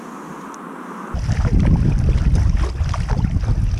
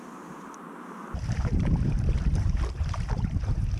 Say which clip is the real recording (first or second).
first